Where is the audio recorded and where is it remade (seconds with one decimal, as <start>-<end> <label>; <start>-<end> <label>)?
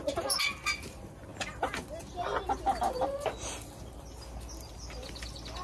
0.0-5.6 recorded